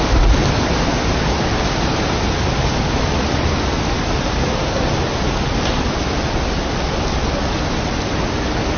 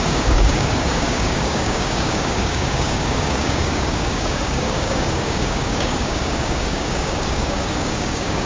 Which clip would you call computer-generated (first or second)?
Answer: second